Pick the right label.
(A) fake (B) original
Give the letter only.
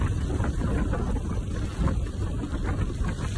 B